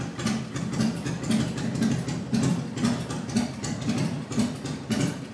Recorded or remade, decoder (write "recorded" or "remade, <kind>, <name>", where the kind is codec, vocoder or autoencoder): recorded